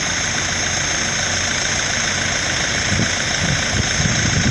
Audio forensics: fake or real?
real